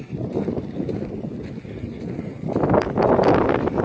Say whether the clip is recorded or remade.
recorded